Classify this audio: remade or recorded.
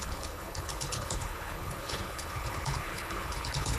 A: remade